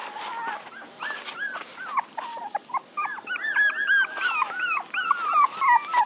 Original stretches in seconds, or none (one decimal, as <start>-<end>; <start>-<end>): 0.0-6.1